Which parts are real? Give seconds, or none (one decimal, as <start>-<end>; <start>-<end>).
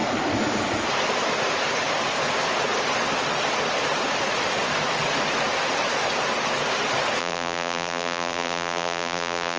0.0-7.2